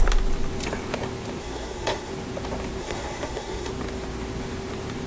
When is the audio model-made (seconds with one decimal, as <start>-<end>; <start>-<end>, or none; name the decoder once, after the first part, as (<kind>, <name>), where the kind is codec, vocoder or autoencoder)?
1.4-2.1 (codec, SNAC); 2.8-3.7